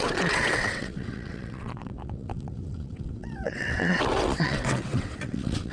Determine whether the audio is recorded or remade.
remade